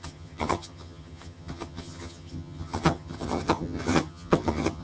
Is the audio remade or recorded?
remade